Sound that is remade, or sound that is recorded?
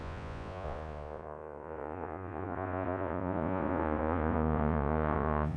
remade